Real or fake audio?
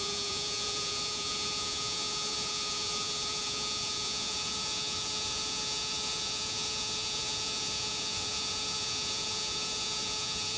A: fake